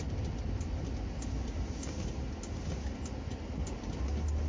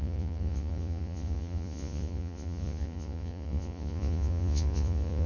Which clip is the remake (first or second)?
second